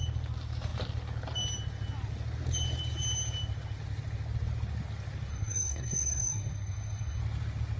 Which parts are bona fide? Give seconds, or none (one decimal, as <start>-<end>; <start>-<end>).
0.0-5.3; 7.2-7.8